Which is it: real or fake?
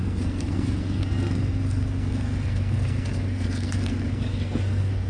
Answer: fake